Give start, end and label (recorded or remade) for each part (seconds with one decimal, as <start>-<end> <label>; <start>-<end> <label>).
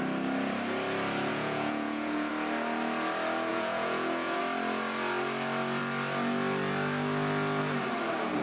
0.0-1.3 recorded; 1.3-2.3 remade; 2.3-3.5 recorded; 3.5-4.4 remade; 4.4-8.4 recorded